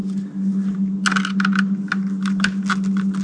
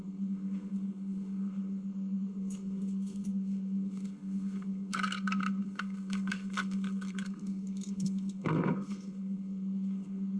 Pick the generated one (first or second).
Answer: second